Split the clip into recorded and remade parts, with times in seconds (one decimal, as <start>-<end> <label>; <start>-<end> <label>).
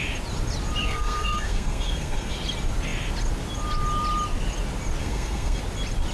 0.0-0.8 recorded; 0.8-2.3 remade; 2.3-5.0 recorded; 5.0-5.6 remade; 5.6-6.1 recorded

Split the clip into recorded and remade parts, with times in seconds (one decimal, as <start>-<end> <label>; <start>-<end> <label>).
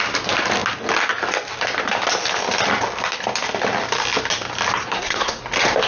0.0-4.8 recorded; 4.8-5.4 remade; 5.4-5.9 recorded